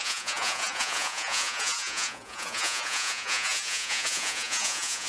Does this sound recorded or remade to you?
remade